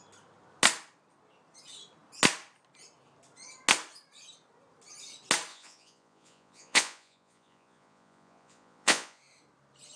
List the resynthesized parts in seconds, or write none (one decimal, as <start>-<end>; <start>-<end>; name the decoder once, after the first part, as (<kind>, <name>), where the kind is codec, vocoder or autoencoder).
5.5-9.2 (vocoder, Vocos)